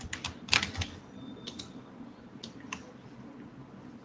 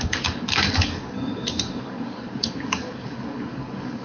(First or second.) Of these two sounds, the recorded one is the first